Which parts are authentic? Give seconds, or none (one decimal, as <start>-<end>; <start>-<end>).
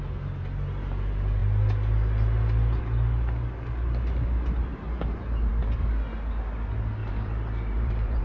0.0-7.0